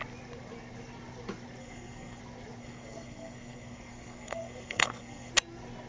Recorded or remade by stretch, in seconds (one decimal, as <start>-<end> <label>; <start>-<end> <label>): 0.0-1.6 recorded; 1.6-2.2 remade; 2.2-2.6 recorded; 2.6-5.3 remade; 5.3-5.9 recorded